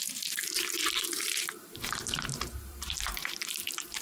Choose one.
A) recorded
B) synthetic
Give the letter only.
B